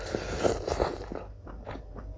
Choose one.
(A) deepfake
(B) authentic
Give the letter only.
B